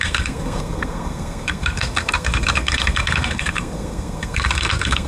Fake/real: fake